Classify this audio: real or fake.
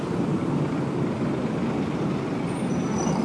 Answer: real